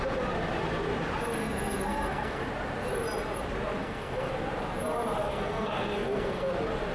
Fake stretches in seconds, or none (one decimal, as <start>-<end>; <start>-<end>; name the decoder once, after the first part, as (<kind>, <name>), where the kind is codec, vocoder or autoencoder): 1.4-2.4 (codec, SNAC); 3.8-4.3; 5.2-6.5